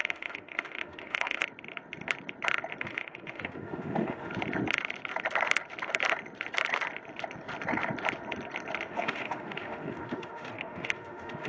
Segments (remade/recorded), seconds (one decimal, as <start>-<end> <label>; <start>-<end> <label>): 0.0-1.4 remade; 1.4-2.8 recorded; 2.8-4.3 remade; 4.3-8.9 recorded; 8.9-11.5 remade